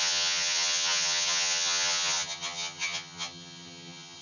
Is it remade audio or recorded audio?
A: remade